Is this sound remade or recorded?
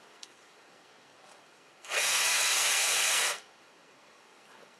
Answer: remade